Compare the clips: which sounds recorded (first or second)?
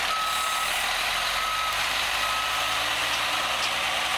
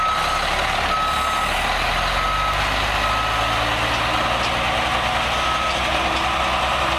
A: second